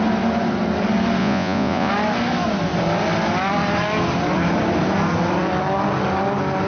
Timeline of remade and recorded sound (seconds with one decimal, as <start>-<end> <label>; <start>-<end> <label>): 0.0-1.2 recorded; 1.2-1.9 remade; 1.9-6.7 recorded